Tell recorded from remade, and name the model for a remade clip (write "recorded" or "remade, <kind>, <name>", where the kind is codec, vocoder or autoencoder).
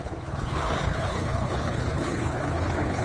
remade, codec, HILCodec